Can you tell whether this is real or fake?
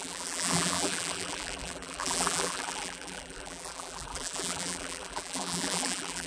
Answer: fake